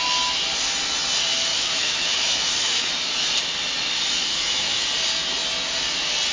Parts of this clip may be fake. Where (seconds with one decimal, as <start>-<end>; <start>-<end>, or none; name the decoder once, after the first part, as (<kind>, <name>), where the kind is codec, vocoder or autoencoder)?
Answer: 1.5-2.9 (autoencoder, DAC-VAE); 4.3-4.8

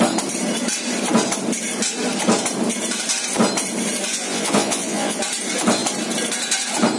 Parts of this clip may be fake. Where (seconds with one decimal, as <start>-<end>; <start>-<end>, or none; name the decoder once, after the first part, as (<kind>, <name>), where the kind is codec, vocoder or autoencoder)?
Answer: 4.1-5.2 (vocoder, Vocos)

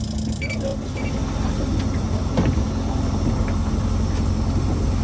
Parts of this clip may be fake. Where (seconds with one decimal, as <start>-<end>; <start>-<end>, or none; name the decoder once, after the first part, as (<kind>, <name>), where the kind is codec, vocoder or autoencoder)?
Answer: none

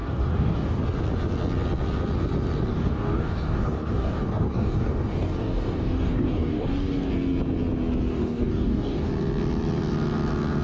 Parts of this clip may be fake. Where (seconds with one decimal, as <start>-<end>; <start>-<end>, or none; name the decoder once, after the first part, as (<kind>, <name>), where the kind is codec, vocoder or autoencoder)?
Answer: 0.0-0.8 (codec, DAC); 2.7-7.1; 8.1-9.1